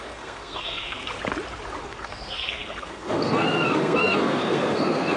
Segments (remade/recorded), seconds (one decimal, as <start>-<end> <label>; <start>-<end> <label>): 0.0-1.1 remade; 1.1-1.8 recorded; 1.8-5.2 remade